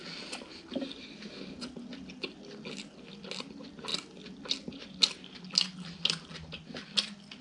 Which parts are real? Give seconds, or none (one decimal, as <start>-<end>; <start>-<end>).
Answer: 0.0-7.4